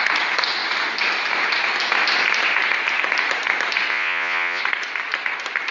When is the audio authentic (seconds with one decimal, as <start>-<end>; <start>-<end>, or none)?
0.0-3.9; 4.6-5.7